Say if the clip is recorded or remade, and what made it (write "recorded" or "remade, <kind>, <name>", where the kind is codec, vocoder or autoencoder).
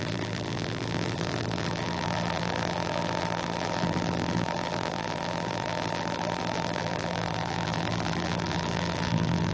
remade, vocoder, BigVGAN v2